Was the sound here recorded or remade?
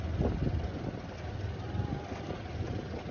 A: recorded